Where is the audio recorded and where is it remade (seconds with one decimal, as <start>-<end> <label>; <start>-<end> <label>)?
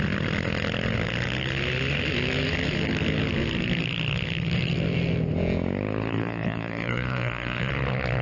0.0-6.1 recorded; 6.1-7.7 remade; 7.7-8.2 recorded